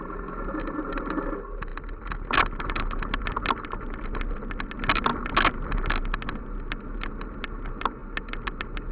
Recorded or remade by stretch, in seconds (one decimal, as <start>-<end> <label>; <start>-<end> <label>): 0.0-8.9 recorded